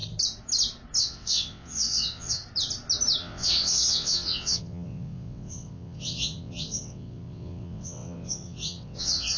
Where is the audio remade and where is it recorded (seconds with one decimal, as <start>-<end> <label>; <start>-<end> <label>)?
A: 0.0-1.0 recorded; 1.0-2.4 remade; 2.4-3.2 recorded; 3.2-9.4 remade